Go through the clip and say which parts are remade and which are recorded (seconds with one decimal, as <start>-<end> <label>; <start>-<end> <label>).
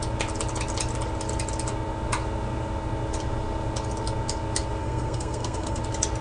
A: 0.0-4.8 recorded; 4.8-5.8 remade; 5.8-6.2 recorded